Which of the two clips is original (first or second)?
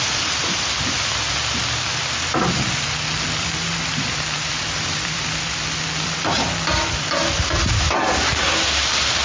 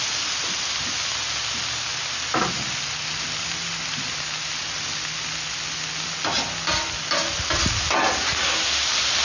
second